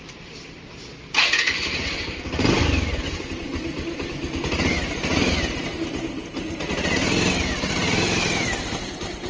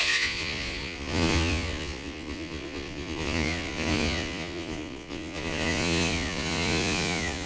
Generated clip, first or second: second